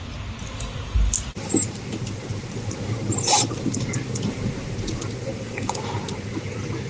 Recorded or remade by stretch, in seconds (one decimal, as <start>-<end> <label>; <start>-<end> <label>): 0.0-5.3 recorded; 5.3-5.8 remade; 5.8-6.9 recorded